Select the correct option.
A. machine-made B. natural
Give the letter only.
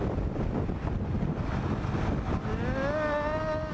B